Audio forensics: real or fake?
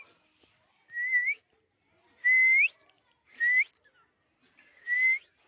real